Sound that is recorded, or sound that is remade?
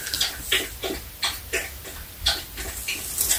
recorded